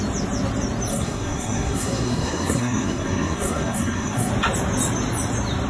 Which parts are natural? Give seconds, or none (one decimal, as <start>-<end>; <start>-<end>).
0.0-0.9; 4.3-5.7